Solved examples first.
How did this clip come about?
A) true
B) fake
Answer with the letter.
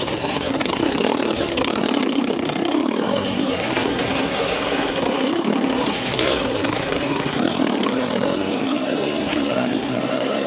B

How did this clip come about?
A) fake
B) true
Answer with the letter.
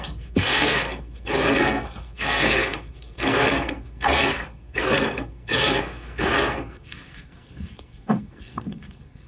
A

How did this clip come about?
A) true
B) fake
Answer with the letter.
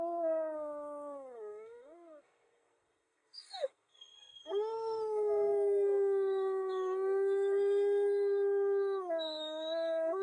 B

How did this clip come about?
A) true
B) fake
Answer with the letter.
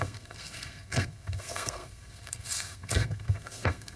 B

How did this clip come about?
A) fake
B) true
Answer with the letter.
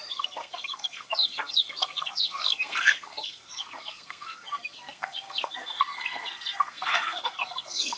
A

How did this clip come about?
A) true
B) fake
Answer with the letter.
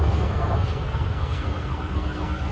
B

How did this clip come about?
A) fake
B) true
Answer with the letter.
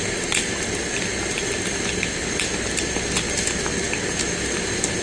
B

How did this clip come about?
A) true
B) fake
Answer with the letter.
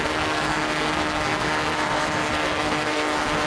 B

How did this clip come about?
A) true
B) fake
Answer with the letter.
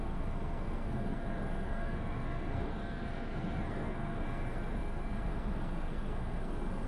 B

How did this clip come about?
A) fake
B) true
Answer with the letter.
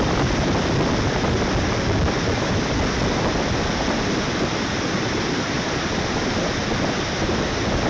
B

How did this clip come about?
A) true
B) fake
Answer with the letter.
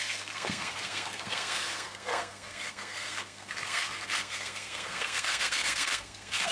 B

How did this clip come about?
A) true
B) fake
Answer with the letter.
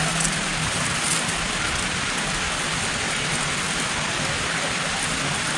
A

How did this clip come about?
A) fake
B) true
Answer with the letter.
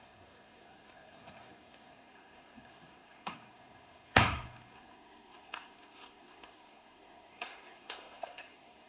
A